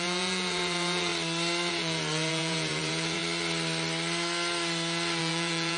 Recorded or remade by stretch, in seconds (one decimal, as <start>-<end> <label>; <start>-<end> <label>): 0.0-1.1 remade; 1.1-1.7 recorded; 1.7-3.2 remade; 3.2-5.2 recorded; 5.2-5.8 remade